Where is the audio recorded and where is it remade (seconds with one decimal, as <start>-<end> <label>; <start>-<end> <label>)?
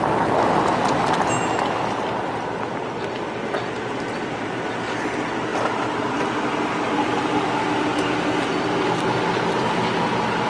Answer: 0.0-10.5 recorded